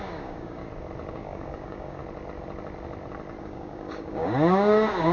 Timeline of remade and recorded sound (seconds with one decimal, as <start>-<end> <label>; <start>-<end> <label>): 0.0-0.6 remade; 0.6-1.1 recorded; 1.1-2.0 remade; 2.0-3.4 recorded; 3.4-5.1 remade